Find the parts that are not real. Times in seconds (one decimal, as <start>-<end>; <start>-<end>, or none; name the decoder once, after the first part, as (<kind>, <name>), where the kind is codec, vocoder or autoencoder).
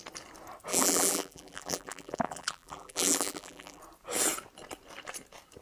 0.7-3.8 (vocoder, BigVGAN v2)